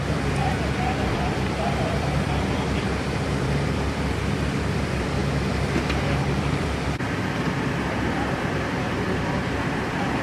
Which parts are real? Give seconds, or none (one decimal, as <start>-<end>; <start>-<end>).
0.4-1.5; 5.2-6.2